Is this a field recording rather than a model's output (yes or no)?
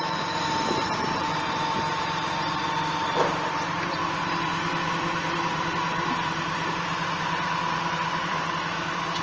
no